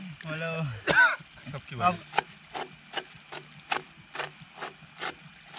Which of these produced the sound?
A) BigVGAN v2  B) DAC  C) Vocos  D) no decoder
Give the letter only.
D